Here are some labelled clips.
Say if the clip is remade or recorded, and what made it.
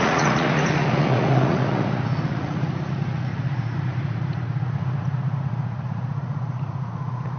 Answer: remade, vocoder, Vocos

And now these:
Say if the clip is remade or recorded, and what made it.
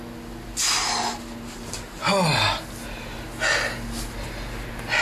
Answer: recorded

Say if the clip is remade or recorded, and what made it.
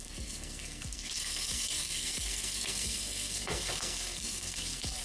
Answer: remade, codec, SNAC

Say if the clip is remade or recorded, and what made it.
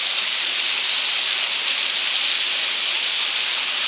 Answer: recorded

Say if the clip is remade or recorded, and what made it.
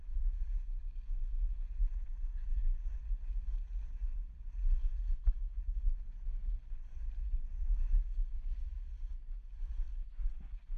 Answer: recorded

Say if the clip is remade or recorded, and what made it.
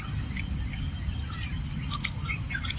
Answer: recorded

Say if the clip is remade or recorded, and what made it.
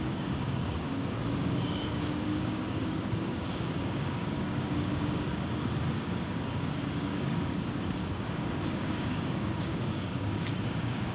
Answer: remade, codec, DAC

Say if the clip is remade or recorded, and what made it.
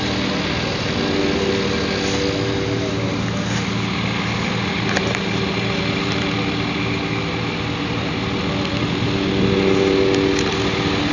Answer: recorded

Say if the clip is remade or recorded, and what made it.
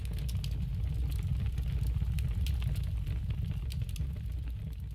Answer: recorded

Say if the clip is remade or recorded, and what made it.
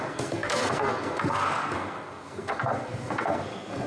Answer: remade, codec, SNAC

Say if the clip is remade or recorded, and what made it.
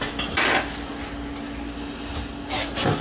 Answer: recorded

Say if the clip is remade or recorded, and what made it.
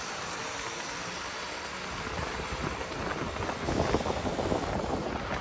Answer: recorded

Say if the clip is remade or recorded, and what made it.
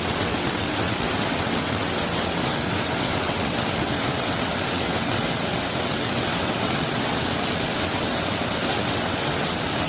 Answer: remade, vocoder, WaveNeXt